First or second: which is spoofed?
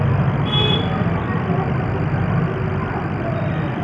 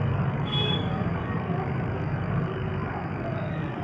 second